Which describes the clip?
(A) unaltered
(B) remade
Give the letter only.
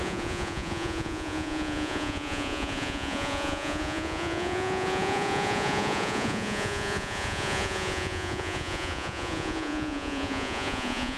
B